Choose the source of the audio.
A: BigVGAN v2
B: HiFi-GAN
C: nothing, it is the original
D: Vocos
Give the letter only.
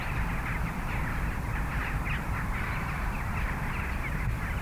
C